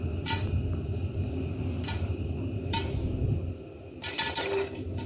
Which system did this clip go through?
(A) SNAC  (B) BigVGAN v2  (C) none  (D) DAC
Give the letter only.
B